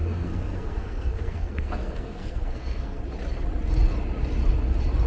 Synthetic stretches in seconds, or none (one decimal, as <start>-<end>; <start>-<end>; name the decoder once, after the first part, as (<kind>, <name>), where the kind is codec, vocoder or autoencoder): 0.0-3.0 (codec, SNAC)